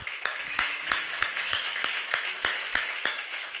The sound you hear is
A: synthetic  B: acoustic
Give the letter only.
A